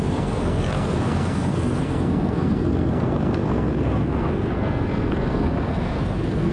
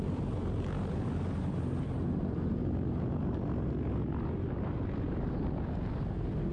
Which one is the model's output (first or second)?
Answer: first